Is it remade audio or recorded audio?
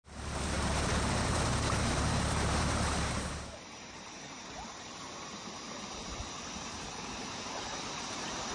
remade